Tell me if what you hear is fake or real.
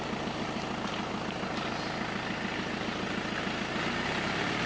real